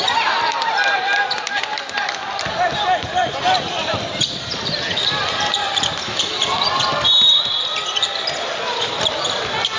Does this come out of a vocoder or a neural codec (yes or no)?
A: yes